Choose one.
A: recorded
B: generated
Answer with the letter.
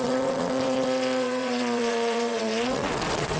B